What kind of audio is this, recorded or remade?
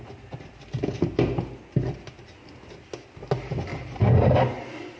recorded